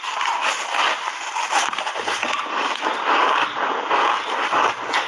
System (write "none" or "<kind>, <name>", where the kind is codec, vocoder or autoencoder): none